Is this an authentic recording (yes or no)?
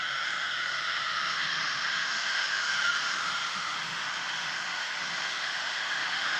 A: no